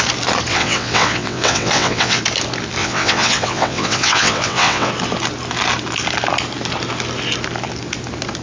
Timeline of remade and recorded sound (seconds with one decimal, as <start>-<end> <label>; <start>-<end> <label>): 0.0-0.5 recorded; 0.5-2.2 remade; 2.2-2.8 recorded; 2.8-4.9 remade; 4.9-8.4 recorded